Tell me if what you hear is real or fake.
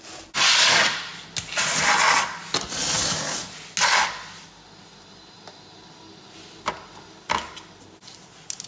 real